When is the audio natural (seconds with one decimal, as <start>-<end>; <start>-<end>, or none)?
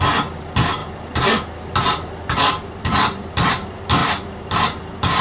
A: 0.0-5.2